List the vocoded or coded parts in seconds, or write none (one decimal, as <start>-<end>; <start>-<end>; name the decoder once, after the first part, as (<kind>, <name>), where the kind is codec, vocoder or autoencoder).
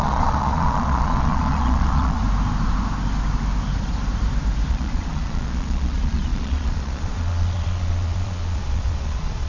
0.0-2.2 (vocoder, Vocos); 4.7-9.5